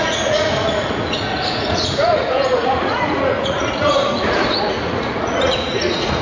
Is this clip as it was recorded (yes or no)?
no